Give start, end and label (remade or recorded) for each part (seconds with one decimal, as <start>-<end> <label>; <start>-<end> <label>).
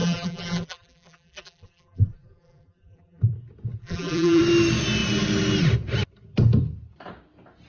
0.0-3.2 remade; 3.2-3.8 recorded; 3.8-4.4 remade; 4.4-7.7 recorded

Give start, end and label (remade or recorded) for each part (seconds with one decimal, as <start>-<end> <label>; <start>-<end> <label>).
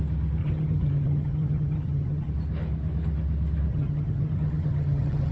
0.0-0.4 recorded; 0.4-2.3 remade; 2.3-3.7 recorded; 3.7-5.3 remade